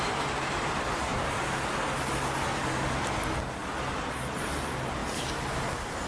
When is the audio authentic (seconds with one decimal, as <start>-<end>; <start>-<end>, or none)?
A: 0.0-5.0